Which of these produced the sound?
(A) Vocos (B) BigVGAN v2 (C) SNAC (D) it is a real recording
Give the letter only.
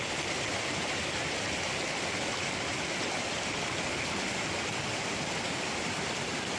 D